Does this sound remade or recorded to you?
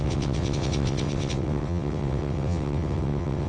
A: remade